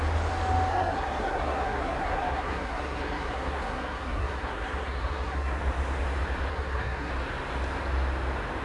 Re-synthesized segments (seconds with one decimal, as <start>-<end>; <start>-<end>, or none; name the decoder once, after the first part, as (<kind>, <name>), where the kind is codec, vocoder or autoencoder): 0.7-5.6 (codec, SNAC); 6.5-7.1